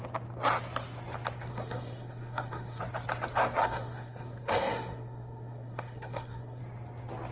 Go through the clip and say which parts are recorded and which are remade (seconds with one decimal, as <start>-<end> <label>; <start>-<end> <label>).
0.0-1.5 recorded; 1.5-2.8 remade; 2.8-3.6 recorded; 3.6-6.6 remade; 6.6-7.3 recorded